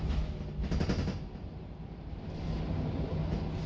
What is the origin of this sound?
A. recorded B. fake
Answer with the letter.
A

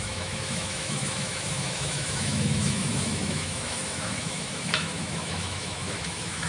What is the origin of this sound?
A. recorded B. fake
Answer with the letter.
B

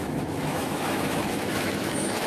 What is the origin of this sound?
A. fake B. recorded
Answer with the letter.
A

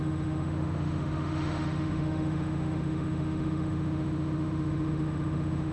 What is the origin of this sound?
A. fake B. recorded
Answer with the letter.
A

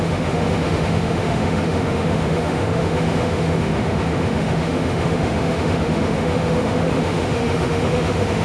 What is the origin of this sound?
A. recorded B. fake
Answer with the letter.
B